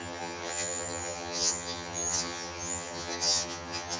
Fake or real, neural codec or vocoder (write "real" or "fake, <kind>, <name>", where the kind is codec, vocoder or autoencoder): fake, vocoder, HiFi-GAN